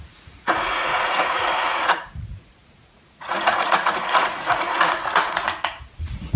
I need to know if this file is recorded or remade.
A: remade